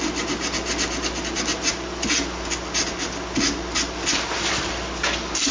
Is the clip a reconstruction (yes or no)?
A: no